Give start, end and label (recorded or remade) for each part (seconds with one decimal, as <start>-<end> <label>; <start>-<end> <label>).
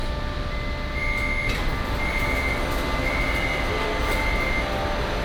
0.0-5.2 recorded